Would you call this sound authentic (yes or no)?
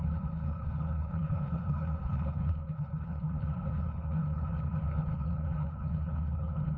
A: no